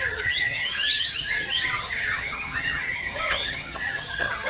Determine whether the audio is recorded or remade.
remade